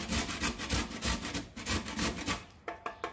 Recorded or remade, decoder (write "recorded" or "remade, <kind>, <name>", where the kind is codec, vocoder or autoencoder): recorded